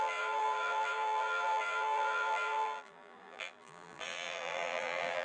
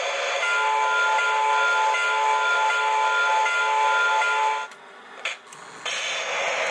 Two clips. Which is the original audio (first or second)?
second